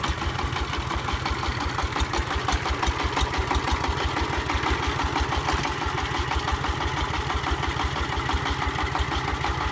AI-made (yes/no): no